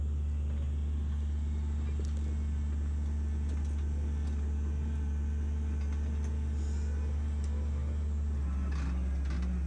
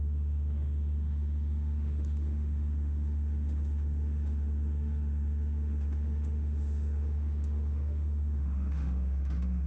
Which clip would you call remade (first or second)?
second